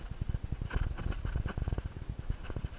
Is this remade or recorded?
recorded